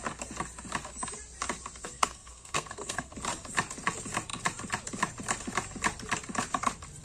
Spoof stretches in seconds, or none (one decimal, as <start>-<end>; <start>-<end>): 1.8-3.1